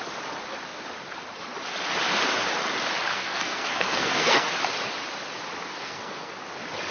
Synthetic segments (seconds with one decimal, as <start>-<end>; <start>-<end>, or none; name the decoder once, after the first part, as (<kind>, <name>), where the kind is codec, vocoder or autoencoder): 3.1-4.5 (codec, SNAC); 5.7-6.3